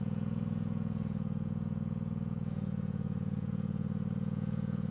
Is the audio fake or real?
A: fake